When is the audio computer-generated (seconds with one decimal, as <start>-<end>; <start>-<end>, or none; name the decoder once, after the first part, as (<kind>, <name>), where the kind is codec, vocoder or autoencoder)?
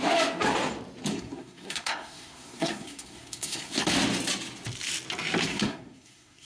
1.1-3.7 (codec, SNAC); 5.5-6.5